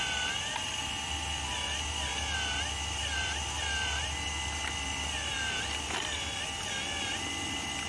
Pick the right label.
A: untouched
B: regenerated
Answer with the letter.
A